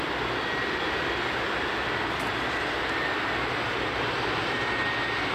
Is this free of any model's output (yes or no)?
yes